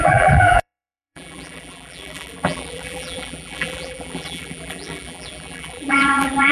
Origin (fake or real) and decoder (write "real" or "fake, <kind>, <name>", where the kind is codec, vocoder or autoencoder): fake, vocoder, BigVGAN v2